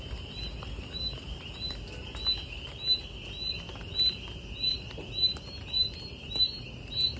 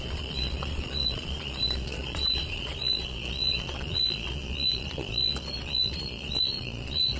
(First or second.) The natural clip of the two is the first